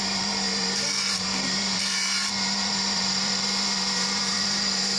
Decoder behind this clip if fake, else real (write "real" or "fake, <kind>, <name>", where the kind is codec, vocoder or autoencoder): fake, vocoder, BigVGAN v2